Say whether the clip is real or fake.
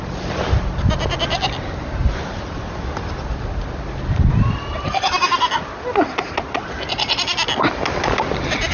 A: real